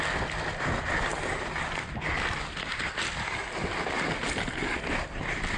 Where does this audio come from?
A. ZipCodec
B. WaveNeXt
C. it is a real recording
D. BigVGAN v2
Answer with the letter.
C